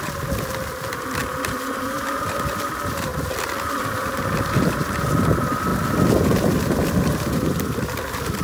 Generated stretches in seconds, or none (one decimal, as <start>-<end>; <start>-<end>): 0.0-8.4